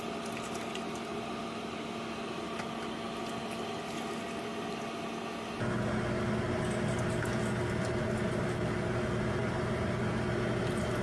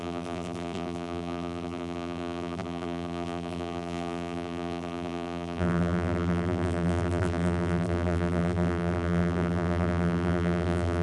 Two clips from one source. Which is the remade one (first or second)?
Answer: second